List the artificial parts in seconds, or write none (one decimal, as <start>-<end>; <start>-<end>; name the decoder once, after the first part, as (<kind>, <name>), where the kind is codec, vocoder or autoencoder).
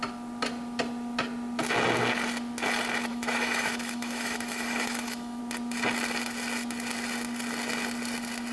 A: 3.1-5.4 (autoencoder, DAC-VAE)